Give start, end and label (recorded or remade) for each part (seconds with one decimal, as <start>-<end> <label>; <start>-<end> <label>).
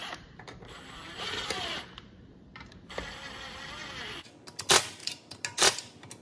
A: 0.0-3.0 remade; 3.0-6.2 recorded